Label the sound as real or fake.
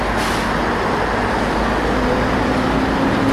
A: real